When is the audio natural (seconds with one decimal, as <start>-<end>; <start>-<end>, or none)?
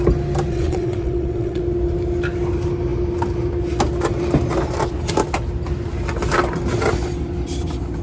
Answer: 0.0-0.5; 1.6-8.0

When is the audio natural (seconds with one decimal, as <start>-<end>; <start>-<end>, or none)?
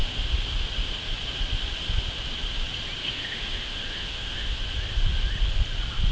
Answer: 0.0-3.0; 4.6-6.1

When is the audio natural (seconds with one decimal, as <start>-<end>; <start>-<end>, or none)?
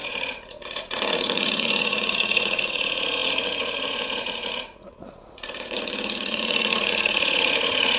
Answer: none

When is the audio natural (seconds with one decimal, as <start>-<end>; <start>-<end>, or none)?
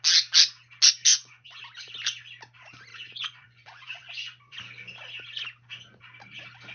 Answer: 0.0-1.1; 1.6-2.9; 4.6-6.7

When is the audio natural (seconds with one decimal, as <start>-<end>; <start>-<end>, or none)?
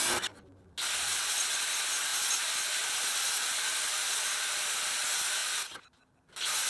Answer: 0.0-6.7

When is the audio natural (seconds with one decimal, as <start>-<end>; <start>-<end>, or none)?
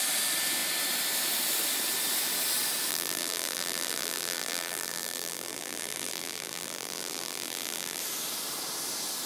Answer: 0.0-2.9; 8.0-9.3